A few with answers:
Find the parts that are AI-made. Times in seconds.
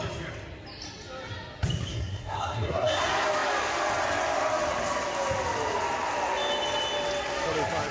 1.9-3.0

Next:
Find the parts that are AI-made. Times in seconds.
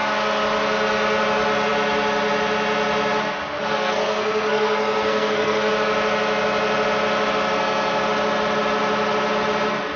3.7-5.7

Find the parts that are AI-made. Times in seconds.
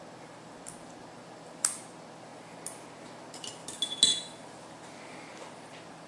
none